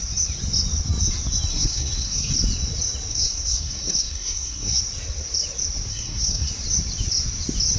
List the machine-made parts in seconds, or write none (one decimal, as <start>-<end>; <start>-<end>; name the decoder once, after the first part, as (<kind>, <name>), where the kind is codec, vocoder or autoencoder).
1.5-2.3 (codec, SNAC); 3.1-4.8; 5.9-6.5